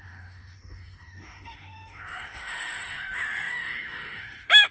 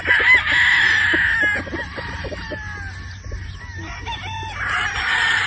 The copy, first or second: first